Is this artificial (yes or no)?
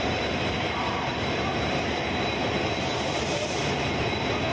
yes